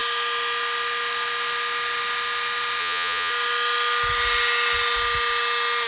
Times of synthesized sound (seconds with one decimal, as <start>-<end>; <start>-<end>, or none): 2.8-3.3